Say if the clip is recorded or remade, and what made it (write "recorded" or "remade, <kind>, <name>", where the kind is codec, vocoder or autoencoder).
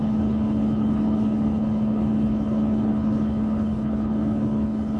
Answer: remade, codec, HILCodec